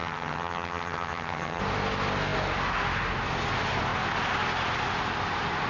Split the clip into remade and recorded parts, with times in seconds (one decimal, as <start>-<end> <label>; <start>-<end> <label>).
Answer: 0.0-1.6 remade; 1.6-5.7 recorded